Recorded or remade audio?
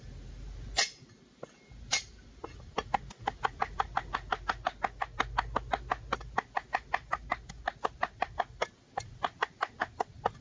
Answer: recorded